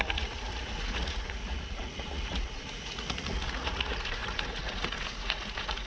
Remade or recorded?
remade